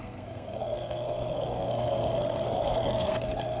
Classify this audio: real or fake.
fake